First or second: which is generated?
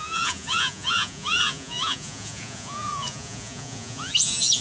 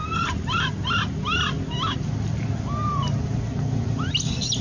first